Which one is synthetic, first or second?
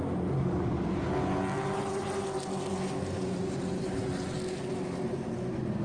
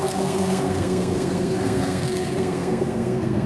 second